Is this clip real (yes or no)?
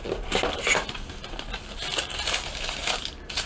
yes